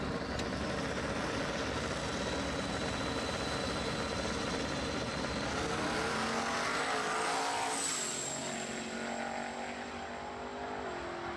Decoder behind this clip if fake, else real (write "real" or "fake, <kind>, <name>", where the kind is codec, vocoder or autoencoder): real